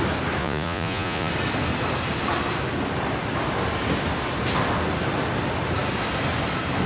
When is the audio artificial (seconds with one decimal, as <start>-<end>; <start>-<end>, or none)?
0.4-1.3